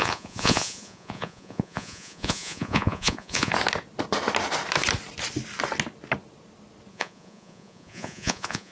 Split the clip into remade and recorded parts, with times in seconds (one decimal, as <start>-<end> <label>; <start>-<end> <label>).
0.0-3.5 remade; 3.5-6.9 recorded; 6.9-8.7 remade